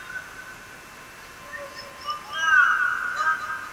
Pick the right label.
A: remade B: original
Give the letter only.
B